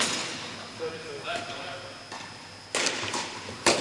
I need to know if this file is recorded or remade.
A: recorded